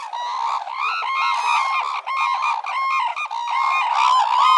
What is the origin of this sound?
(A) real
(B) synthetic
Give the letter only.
A